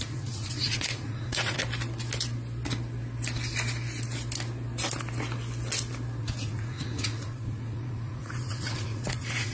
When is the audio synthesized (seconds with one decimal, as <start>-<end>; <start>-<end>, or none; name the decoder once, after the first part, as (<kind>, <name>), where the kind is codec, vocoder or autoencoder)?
0.0-1.6 (vocoder, Vocos); 6.2-9.5